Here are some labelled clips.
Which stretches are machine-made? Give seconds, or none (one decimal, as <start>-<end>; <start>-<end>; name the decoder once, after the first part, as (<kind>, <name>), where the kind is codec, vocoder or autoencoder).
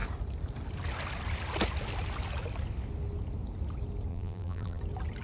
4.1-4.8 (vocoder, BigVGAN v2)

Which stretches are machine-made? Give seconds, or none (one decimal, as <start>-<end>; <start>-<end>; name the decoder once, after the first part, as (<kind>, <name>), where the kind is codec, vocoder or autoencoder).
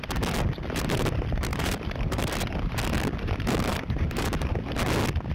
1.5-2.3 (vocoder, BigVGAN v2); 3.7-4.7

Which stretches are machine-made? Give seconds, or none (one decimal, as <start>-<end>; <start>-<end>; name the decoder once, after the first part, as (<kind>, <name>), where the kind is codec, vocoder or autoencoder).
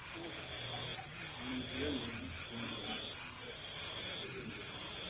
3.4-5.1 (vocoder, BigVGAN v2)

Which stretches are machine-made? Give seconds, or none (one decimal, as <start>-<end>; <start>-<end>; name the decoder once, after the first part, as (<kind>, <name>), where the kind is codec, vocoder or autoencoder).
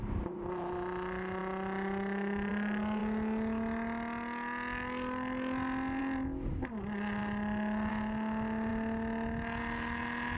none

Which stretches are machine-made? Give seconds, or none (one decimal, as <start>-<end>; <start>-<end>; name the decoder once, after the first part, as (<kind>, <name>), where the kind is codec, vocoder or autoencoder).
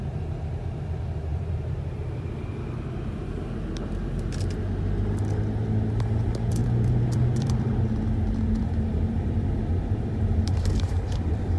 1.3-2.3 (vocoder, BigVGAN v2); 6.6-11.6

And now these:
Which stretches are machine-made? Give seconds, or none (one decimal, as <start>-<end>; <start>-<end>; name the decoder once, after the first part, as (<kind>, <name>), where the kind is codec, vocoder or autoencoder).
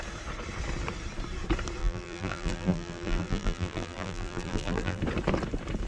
1.8-5.0 (vocoder, BigVGAN v2)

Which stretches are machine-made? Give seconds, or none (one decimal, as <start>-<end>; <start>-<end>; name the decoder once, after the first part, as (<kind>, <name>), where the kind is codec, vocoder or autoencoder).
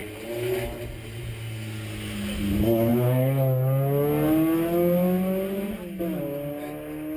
none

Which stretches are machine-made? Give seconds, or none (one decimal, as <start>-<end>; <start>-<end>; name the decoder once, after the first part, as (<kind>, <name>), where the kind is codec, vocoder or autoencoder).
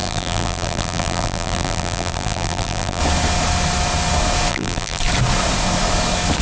0.0-3.0 (vocoder, BigVGAN v2); 4.5-5.0